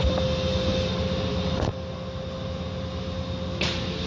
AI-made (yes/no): no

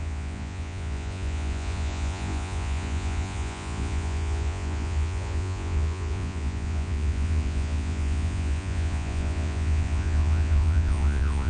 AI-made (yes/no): yes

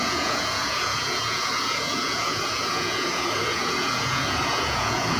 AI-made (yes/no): yes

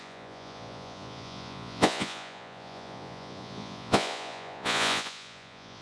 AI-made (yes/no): yes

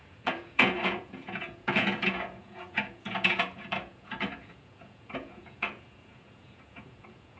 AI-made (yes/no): yes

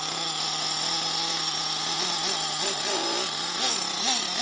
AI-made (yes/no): no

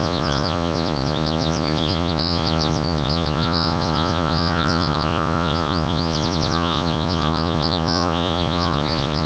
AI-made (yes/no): yes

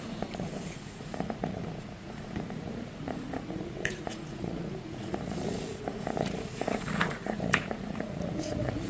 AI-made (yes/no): yes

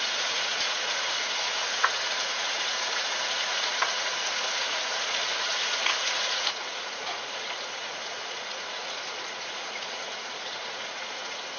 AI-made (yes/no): yes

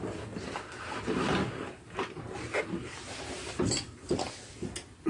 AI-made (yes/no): no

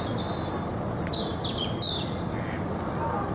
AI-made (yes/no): no